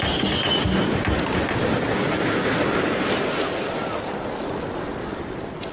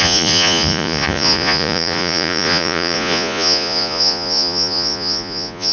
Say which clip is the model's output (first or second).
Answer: second